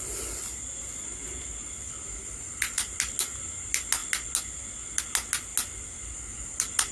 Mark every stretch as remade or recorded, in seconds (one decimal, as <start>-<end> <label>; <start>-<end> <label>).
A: 0.0-6.9 recorded